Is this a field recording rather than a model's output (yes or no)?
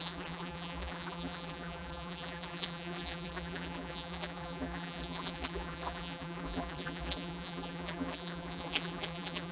no